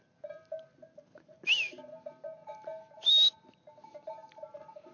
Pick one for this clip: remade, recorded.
recorded